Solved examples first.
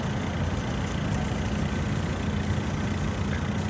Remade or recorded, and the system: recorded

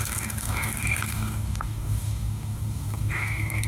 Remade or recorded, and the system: remade, codec, DAC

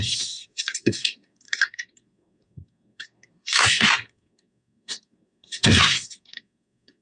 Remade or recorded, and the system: remade, codec, SNAC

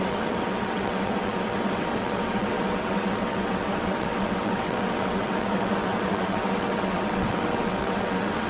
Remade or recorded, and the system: remade, vocoder, WaveNeXt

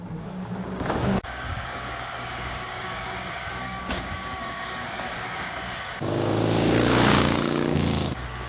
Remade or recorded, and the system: remade, codec, DAC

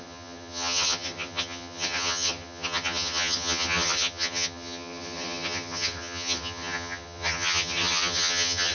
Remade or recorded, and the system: remade, vocoder, HiFi-GAN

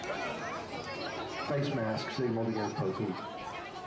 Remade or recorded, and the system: recorded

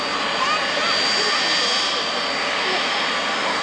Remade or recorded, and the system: recorded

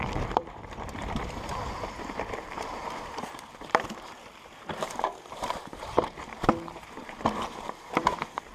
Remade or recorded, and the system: remade, vocoder, BigVGAN v2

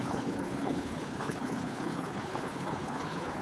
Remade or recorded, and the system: remade, codec, HILCodec